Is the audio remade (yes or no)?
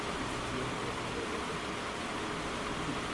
no